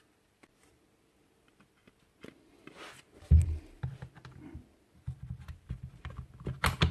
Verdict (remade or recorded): recorded